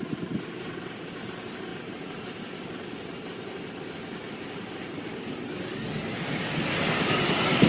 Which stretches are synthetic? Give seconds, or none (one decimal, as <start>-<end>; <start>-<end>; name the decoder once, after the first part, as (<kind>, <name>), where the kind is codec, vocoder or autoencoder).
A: none